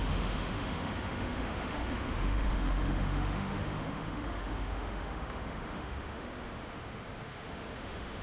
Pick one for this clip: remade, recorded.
remade